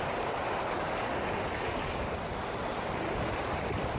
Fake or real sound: real